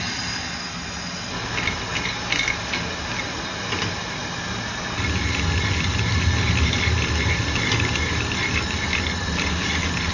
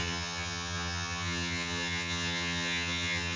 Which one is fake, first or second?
second